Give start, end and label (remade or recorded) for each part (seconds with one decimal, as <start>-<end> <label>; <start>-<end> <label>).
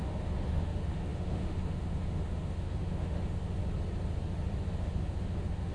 0.0-3.6 remade; 3.6-4.7 recorded; 4.7-5.7 remade